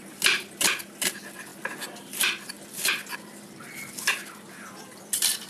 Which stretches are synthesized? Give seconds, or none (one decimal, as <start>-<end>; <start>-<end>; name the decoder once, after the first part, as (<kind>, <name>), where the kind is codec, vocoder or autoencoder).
none